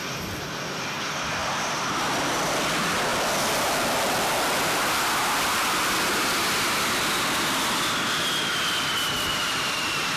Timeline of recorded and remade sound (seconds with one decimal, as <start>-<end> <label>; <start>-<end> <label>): 0.0-9.3 recorded; 9.3-10.2 remade